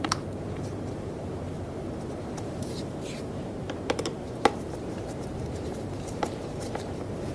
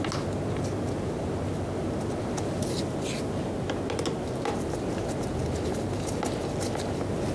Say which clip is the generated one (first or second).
first